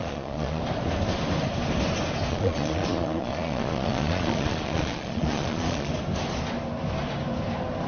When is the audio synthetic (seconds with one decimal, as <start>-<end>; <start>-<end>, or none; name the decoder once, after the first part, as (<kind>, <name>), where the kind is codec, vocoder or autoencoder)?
0.0-0.6 (vocoder, Vocos); 2.3-5.9